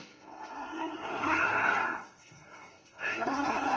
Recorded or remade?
remade